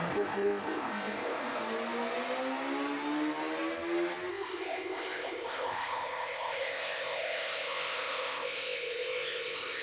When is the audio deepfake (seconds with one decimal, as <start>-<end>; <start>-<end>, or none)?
0.0-1.6; 4.3-9.8